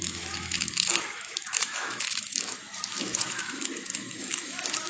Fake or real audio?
fake